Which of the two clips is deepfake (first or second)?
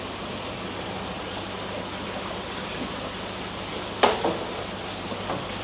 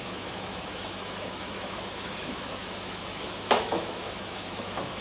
second